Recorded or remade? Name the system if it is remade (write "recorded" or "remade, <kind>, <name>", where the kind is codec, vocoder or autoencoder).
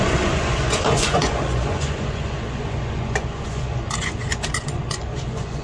remade, vocoder, Vocos